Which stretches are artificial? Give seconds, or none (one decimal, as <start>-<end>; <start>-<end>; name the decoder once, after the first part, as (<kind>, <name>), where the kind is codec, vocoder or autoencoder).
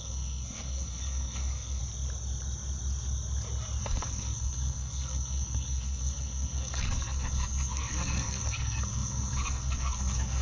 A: 0.0-1.8 (codec, SNAC); 3.8-10.4